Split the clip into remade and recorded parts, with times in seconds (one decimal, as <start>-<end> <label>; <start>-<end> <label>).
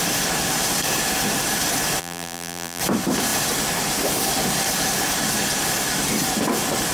0.0-2.0 recorded; 2.0-2.8 remade; 2.8-6.9 recorded